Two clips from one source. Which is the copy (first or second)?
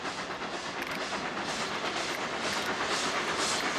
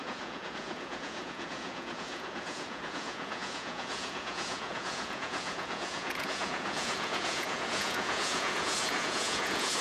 second